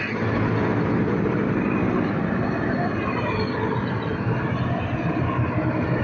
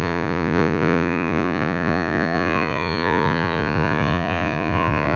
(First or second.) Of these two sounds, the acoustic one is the first